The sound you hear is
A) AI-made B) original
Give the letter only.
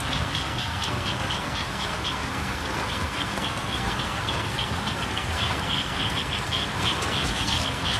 A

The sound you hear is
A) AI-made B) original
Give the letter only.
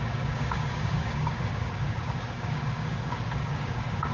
A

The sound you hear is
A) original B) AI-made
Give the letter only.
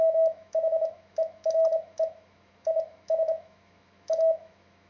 B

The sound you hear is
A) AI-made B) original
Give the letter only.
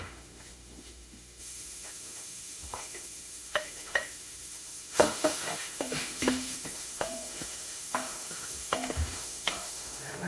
A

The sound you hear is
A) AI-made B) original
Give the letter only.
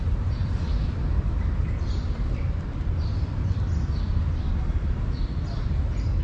A